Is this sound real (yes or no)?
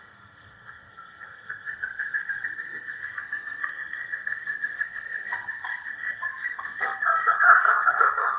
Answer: no